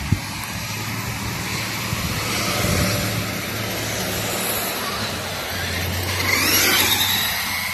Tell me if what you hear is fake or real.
real